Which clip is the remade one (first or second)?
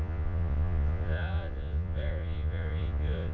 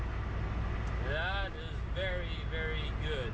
first